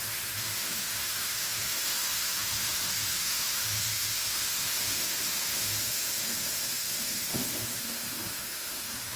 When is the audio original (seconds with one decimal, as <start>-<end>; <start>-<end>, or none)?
none

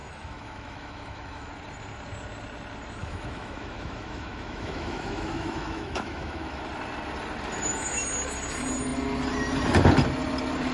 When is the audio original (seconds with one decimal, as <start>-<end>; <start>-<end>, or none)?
1.5-3.0; 6.6-10.7

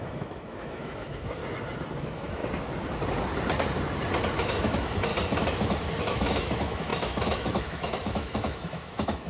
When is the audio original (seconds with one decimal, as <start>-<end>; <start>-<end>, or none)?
1.4-2.0; 2.4-4.3; 5.1-6.0

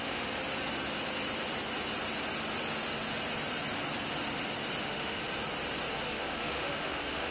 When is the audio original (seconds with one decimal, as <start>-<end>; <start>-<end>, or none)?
0.4-4.8; 5.2-5.9